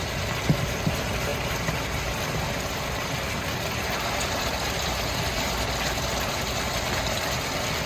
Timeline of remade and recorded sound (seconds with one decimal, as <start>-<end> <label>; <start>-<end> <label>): 0.0-7.9 recorded